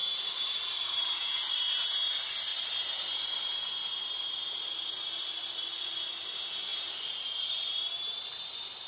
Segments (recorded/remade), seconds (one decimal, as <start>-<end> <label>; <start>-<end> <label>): 0.0-1.5 remade; 1.5-6.7 recorded; 6.7-8.9 remade